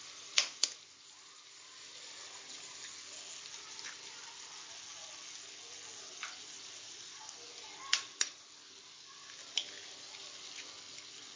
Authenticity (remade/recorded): recorded